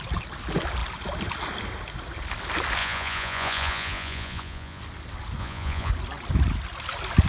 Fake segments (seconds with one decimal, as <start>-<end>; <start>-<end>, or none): 2.8-4.8; 5.4-5.9